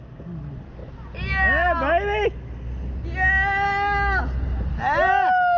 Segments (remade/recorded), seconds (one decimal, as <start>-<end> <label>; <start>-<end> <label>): 0.0-5.6 recorded